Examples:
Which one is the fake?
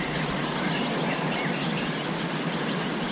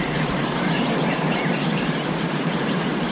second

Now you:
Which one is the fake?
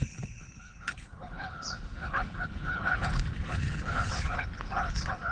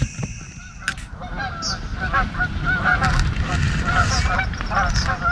first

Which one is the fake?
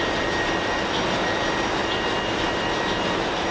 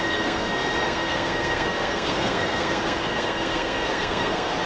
second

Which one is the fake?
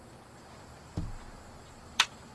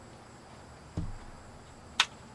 first